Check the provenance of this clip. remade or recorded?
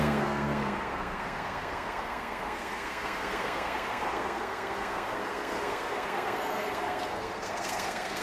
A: remade